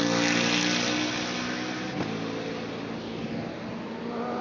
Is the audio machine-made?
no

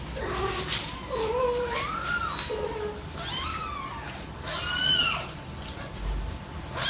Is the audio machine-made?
no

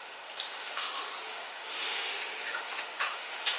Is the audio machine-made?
yes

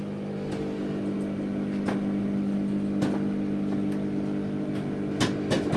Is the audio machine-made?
no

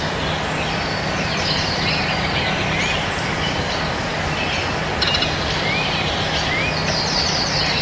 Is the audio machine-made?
no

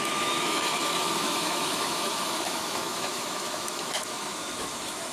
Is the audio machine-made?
yes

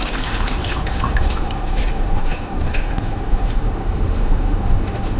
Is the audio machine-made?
yes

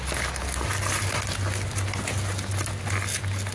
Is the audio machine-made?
no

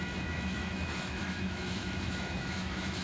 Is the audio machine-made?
yes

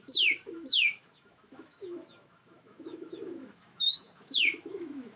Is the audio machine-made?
yes